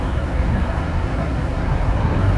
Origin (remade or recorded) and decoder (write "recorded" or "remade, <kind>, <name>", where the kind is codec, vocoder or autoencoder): remade, codec, SNAC